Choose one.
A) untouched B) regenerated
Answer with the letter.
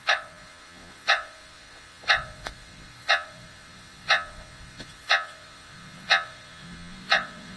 B